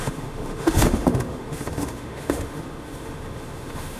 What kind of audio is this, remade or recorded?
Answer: remade